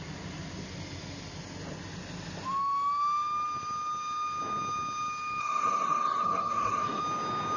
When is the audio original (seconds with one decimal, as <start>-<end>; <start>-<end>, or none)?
0.0-5.4; 7.0-7.6